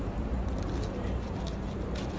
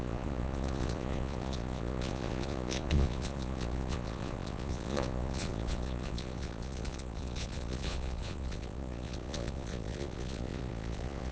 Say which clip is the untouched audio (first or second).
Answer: first